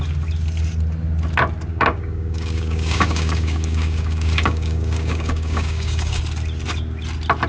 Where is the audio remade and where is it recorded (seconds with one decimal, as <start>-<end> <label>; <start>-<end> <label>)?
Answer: 0.0-1.7 recorded; 1.7-6.2 remade; 6.2-7.5 recorded